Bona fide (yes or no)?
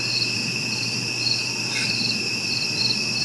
no